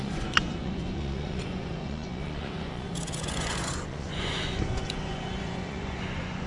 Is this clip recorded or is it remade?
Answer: remade